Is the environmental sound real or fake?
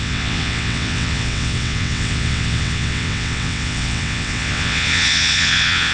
fake